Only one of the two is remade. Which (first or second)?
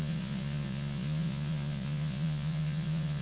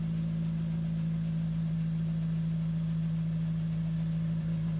first